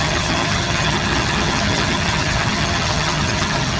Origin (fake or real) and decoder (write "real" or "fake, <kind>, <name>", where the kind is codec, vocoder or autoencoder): fake, vocoder, HiFi-GAN